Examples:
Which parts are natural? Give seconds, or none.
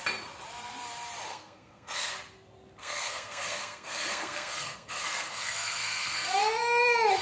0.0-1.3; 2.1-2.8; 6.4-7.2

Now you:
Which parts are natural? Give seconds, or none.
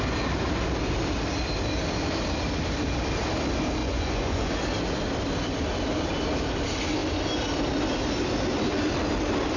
0.0-3.8; 4.5-9.6